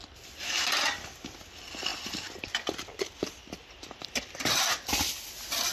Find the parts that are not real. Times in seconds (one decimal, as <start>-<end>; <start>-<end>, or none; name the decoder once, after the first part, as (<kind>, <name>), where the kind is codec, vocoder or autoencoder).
none